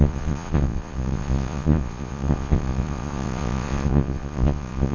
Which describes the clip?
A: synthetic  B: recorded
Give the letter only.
A